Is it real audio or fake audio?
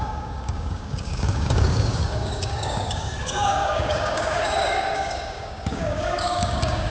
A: fake